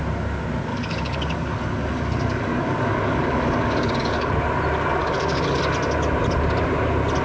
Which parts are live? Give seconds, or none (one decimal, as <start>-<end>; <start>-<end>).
0.0-0.7; 4.3-5.0; 5.6-7.2